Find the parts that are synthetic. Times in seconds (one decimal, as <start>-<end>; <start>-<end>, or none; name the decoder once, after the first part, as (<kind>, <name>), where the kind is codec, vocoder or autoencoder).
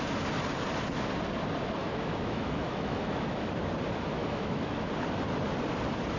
1.8-3.5 (autoencoder, DAC-VAE); 4.2-4.9